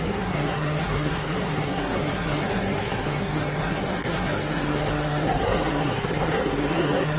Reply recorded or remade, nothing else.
remade